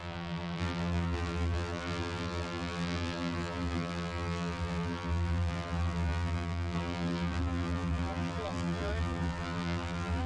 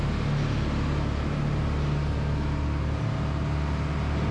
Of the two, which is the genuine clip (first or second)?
second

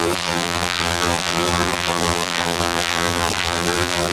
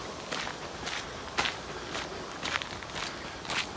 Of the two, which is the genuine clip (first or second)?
second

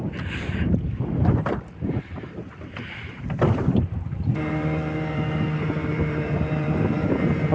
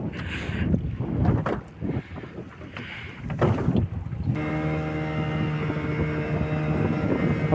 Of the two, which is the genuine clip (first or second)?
second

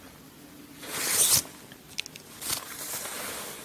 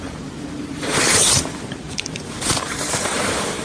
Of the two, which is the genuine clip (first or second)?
first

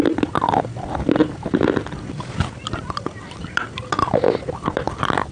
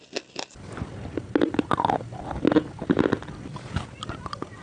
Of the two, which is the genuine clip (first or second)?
second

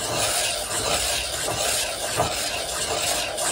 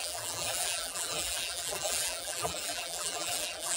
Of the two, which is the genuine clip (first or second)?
first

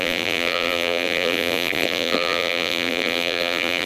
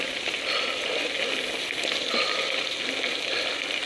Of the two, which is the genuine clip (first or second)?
second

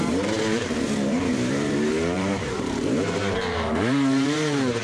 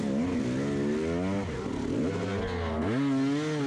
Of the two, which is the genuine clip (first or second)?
second